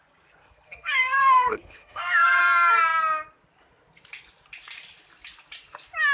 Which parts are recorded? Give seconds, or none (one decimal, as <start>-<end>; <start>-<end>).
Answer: 0.0-0.4; 2.4-6.1